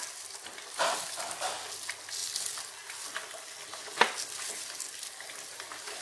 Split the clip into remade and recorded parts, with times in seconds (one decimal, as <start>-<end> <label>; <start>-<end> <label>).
0.0-6.0 recorded